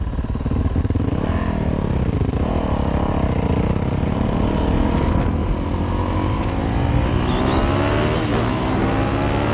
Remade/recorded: recorded